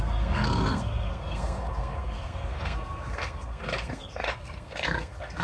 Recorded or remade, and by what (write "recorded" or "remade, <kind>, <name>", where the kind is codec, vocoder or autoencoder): remade, codec, SNAC